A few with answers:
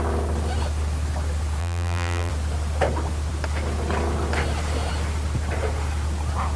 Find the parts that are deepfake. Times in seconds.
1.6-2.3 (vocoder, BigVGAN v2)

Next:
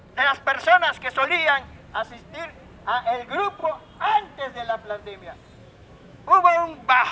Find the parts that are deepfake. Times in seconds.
5.6-7.1 (autoencoder, DAC-VAE)

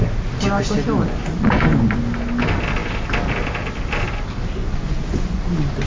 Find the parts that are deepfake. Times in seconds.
1.2-1.8 (vocoder, Vocos); 4.6-5.4

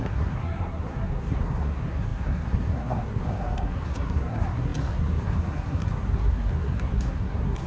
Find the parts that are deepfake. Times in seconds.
0.0-7.7 (codec, SNAC)

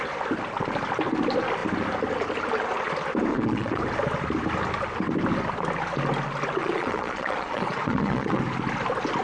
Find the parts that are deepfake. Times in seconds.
3.3-3.8 (vocoder, Vocos); 6.6-8.4

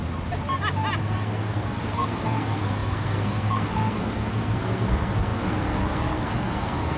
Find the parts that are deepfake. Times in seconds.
1.0-7.0 (codec, SNAC)